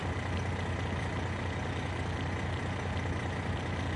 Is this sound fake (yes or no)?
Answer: no